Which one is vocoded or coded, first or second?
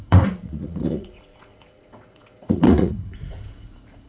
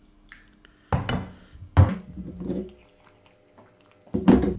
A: first